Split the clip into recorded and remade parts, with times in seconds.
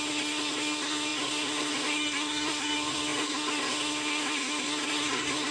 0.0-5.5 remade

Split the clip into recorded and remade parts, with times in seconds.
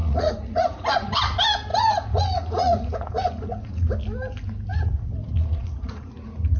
0.0-1.2 remade; 1.2-1.7 recorded; 1.7-3.9 remade; 3.9-4.7 recorded; 4.7-6.1 remade; 6.1-6.6 recorded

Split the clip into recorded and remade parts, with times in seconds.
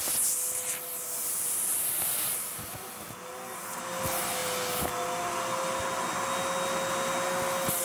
0.0-7.8 recorded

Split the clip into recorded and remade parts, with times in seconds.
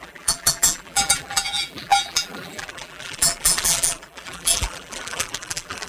0.0-5.9 remade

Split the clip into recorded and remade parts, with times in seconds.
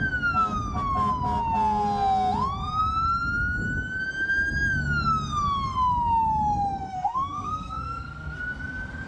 0.0-6.9 recorded; 6.9-8.4 remade; 8.4-9.1 recorded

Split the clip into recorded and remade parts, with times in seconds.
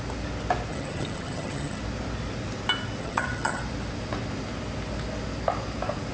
0.0-0.7 recorded; 0.7-1.8 remade; 1.8-3.0 recorded; 3.0-3.6 remade; 3.6-6.1 recorded